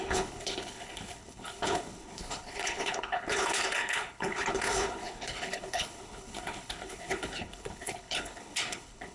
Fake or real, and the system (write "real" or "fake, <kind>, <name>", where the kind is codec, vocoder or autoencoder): fake, codec, HILCodec